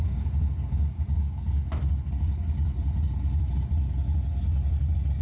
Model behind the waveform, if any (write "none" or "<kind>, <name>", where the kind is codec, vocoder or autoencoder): none